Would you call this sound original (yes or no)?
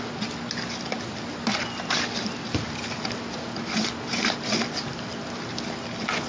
yes